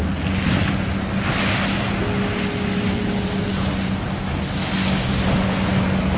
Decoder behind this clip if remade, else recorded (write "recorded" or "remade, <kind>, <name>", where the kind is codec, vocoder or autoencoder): recorded